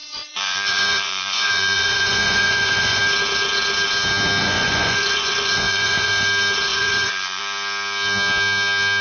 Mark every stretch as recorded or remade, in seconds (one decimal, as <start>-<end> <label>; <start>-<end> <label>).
0.0-3.0 remade; 3.0-4.4 recorded; 4.4-6.1 remade; 6.1-6.7 recorded; 6.7-7.4 remade; 7.4-9.0 recorded

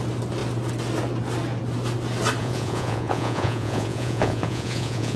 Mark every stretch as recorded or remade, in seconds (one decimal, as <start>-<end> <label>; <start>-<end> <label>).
0.0-2.4 recorded; 2.4-5.2 remade

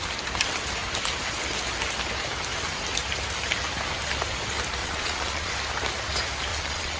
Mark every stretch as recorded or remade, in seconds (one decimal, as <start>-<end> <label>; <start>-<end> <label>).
0.0-4.8 recorded; 4.8-5.5 remade; 5.5-6.5 recorded; 6.5-7.0 remade